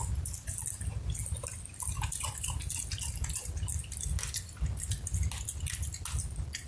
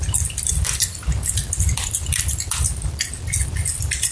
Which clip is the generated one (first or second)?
second